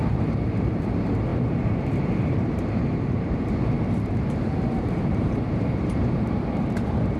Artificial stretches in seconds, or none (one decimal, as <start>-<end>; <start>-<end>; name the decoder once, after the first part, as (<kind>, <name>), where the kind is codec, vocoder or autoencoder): 0.0-7.2 (vocoder, BigVGAN v2)